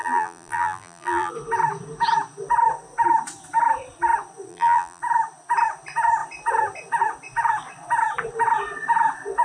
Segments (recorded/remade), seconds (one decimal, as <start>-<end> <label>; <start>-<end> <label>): 0.0-1.3 remade; 1.3-4.5 recorded; 4.5-5.0 remade; 5.0-9.4 recorded